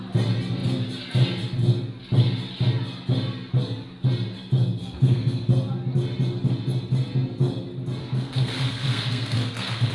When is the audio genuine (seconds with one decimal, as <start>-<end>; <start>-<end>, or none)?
0.0-4.8; 5.5-8.0